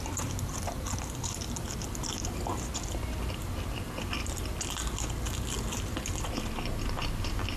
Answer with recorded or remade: recorded